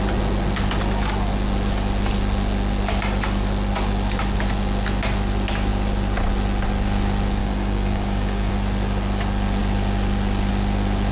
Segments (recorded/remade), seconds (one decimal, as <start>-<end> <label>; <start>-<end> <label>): 0.0-7.4 recorded; 7.4-8.5 remade; 8.5-11.1 recorded